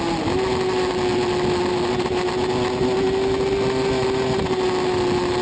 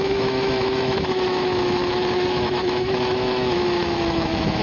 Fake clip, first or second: second